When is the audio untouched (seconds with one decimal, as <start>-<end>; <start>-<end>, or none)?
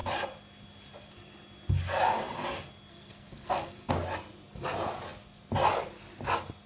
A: 0.0-2.9; 3.9-6.7